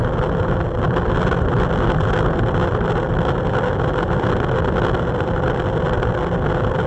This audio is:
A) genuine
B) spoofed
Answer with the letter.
A